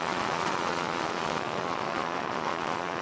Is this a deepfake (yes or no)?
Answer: yes